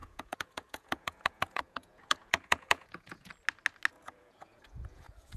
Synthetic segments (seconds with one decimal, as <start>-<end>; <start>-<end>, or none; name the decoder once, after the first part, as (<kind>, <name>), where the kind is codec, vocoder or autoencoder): 0.0-3.3 (vocoder, Vocos); 3.9-5.4